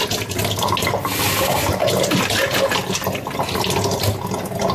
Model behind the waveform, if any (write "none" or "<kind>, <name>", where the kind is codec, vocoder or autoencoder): none